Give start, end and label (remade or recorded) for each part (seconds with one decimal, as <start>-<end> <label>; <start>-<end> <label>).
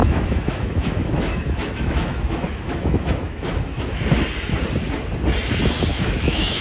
0.0-4.0 remade; 4.0-5.9 recorded; 5.9-6.6 remade